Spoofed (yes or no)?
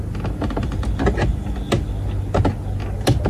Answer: no